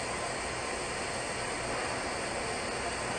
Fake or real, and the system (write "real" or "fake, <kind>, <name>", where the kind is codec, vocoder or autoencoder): real